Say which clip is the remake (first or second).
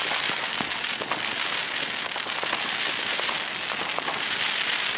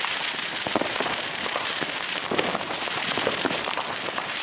second